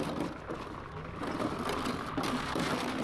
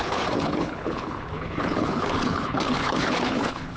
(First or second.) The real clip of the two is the first